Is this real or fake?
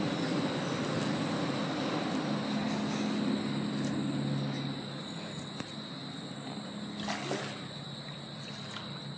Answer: real